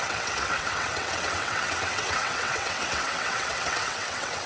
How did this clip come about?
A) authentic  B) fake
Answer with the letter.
B